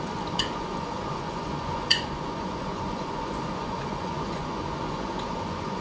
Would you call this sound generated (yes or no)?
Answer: yes